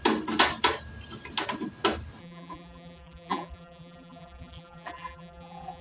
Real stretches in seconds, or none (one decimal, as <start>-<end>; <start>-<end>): 0.0-2.2

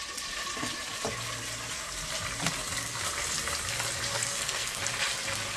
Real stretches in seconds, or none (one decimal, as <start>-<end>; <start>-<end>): 0.0-4.1; 4.8-5.6

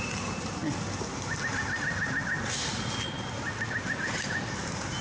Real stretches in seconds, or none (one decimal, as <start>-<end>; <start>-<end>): 0.0-5.0

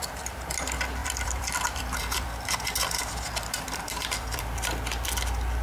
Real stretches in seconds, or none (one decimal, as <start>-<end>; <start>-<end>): 0.0-1.0; 4.4-5.6

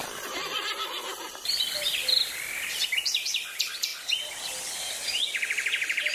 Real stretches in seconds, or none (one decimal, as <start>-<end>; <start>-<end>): 0.0-6.1

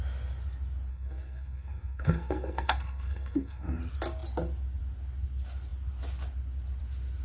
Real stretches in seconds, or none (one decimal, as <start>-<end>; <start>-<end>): 0.0-0.9; 3.8-7.2